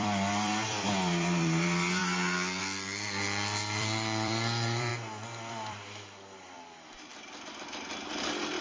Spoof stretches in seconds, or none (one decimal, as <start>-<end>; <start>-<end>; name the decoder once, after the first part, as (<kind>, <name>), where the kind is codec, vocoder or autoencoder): 0.0-2.0 (vocoder, BigVGAN v2); 2.6-4.9; 5.5-8.6